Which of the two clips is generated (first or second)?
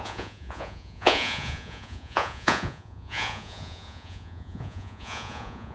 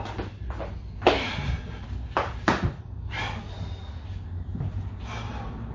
first